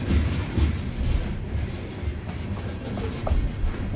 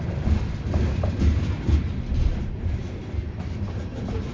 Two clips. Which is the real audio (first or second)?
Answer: first